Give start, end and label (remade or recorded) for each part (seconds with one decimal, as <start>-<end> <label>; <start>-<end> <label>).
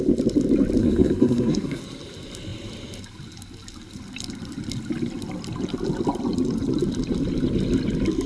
0.0-0.8 recorded; 0.8-1.8 remade; 1.8-8.3 recorded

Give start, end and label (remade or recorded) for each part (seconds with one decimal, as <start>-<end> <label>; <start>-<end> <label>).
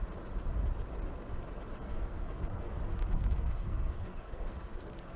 0.0-1.8 recorded; 1.8-5.2 remade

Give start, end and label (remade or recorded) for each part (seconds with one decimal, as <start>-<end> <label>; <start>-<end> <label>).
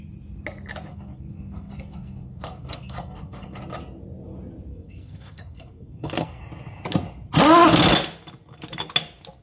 0.0-0.9 recorded; 0.9-3.6 remade; 3.6-4.7 recorded; 4.7-6.4 remade; 6.4-9.4 recorded